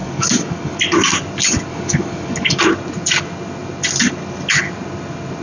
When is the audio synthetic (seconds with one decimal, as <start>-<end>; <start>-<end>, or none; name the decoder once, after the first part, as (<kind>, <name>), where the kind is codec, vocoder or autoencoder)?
0.0-0.8 (codec, DAC); 1.7-2.6